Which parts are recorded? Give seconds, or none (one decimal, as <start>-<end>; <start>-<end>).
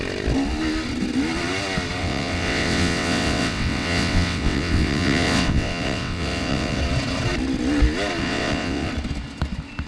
0.0-2.0; 6.8-8.2; 8.9-9.9